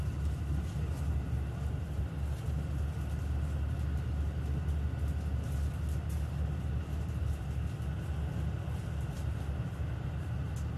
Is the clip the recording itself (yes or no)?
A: yes